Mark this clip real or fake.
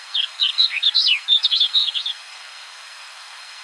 fake